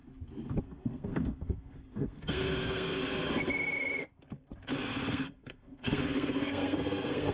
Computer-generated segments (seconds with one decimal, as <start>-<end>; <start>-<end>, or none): 0.6-3.0; 5.1-7.3